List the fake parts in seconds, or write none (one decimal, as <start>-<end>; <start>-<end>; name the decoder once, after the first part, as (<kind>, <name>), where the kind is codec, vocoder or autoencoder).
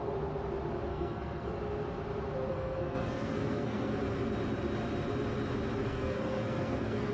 0.9-1.5 (codec, SNAC); 2.5-4.0; 5.8-7.1